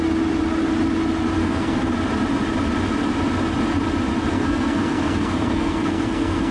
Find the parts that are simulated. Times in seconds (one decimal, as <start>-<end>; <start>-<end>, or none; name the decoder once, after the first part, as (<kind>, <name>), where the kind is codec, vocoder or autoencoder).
1.4-1.9 (codec, SNAC); 4.3-6.5